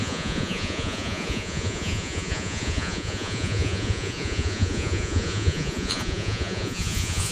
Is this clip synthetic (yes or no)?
yes